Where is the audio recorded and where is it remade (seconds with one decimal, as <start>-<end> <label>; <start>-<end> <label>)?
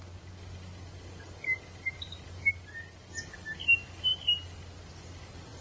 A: 0.0-5.6 recorded